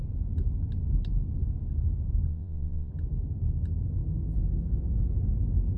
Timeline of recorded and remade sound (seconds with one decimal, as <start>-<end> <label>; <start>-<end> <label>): 0.0-2.3 recorded; 2.3-2.9 remade; 2.9-5.8 recorded